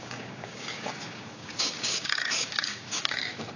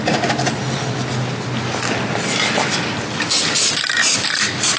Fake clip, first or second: first